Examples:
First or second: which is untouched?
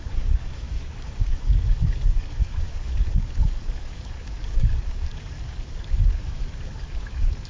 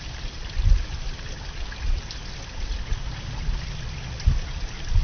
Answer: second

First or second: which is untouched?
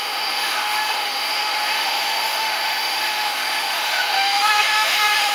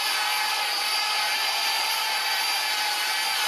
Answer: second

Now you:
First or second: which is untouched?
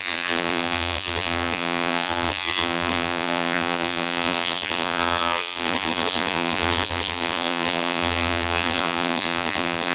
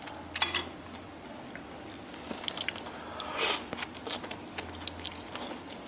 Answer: second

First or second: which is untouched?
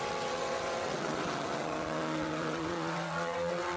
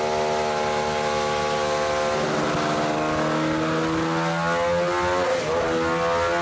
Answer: second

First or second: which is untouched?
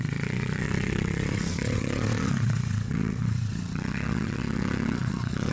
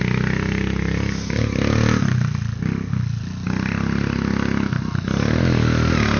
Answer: second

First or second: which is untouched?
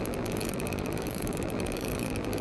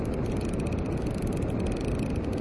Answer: second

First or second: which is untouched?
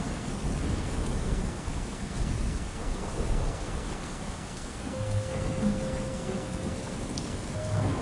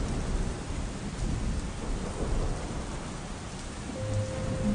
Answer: second